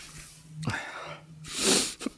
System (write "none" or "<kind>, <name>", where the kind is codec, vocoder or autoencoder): none